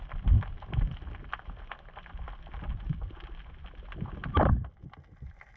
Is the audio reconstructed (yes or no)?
no